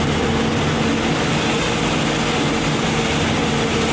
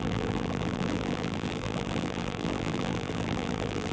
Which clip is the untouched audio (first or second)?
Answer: first